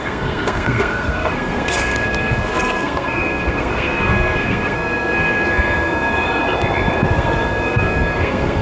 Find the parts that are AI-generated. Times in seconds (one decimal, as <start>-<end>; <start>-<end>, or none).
0.0-6.4; 7.1-8.6